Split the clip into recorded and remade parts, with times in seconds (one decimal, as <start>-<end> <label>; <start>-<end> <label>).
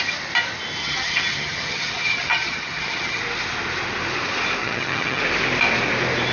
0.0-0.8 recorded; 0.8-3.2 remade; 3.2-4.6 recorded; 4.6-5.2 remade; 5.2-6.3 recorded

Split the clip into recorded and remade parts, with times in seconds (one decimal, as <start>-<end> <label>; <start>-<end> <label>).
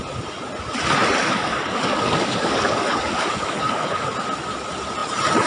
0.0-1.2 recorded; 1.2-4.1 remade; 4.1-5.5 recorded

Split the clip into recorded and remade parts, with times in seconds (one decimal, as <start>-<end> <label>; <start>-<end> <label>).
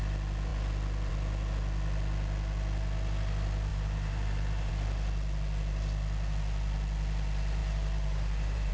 0.0-3.7 recorded; 3.7-4.7 remade; 4.7-7.6 recorded; 7.6-8.7 remade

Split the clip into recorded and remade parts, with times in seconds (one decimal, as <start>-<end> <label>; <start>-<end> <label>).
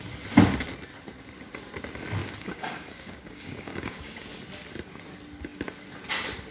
0.0-2.2 recorded; 2.2-4.3 remade; 4.3-6.5 recorded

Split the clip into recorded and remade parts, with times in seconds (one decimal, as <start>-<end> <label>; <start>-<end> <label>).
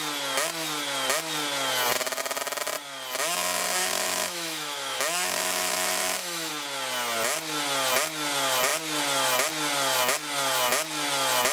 0.0-3.8 recorded; 3.8-6.5 remade; 6.5-11.5 recorded